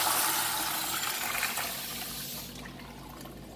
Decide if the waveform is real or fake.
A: real